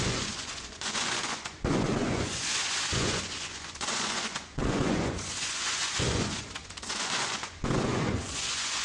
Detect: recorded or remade remade